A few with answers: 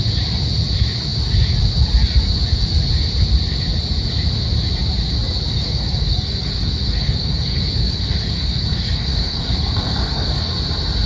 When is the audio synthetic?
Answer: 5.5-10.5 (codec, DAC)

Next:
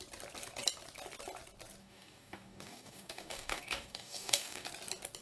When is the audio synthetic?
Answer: 1.8-4.7 (codec, DAC)

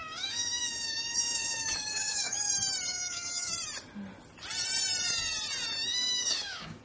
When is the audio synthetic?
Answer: 0.0-2.5 (codec, DAC); 2.9-3.5; 5.9-6.8

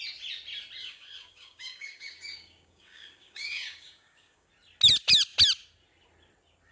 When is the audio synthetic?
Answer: 0.8-4.5 (codec, DAC)

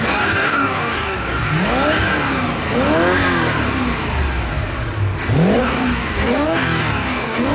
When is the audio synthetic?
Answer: 0.0-1.5 (codec, DAC); 5.6-7.5